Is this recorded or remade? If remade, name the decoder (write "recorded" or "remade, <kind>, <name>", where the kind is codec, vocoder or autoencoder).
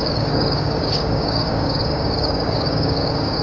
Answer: remade, codec, DAC